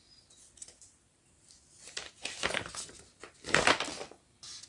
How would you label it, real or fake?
real